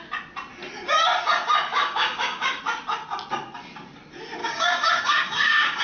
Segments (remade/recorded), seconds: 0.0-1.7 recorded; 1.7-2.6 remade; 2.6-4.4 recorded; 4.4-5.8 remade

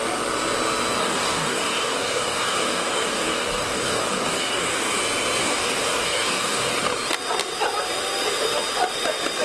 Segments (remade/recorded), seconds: 0.0-1.0 recorded; 1.0-5.0 remade; 5.0-5.4 recorded; 5.4-6.8 remade; 6.8-9.4 recorded

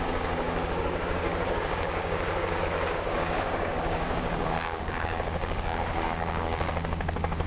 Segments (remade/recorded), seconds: 0.0-7.5 remade

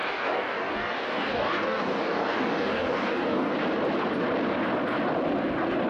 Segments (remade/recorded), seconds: 0.0-3.5 remade; 3.5-5.9 recorded

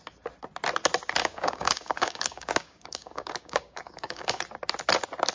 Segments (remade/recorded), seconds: 0.0-1.2 recorded; 1.2-4.4 remade; 4.4-5.3 recorded

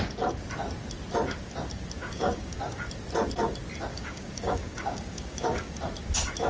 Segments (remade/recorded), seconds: 0.0-2.0 recorded; 2.0-2.9 remade; 2.9-3.9 recorded; 3.9-5.7 remade; 5.7-6.5 recorded